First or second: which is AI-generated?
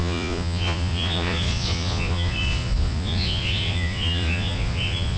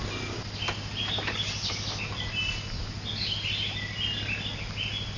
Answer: first